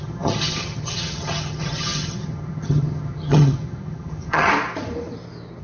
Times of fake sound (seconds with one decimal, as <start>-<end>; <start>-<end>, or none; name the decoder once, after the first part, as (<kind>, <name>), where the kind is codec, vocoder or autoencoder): 0.0-4.5 (vocoder, HiFi-GAN)